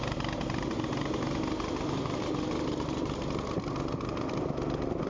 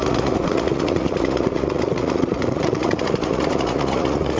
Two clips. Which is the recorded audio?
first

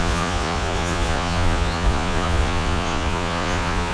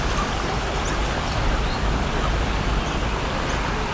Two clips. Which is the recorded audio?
second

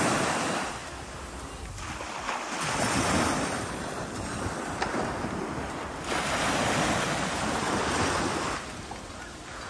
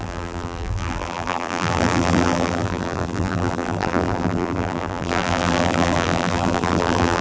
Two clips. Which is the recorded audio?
first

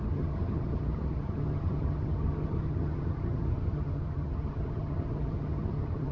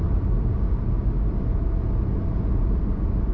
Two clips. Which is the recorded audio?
second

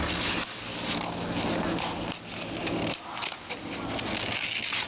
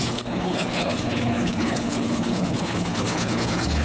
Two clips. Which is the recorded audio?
first